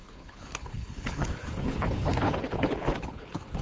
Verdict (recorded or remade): remade